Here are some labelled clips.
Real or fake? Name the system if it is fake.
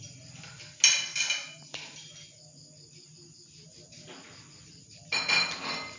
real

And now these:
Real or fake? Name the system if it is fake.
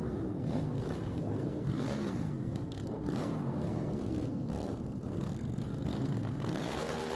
fake, codec, SNAC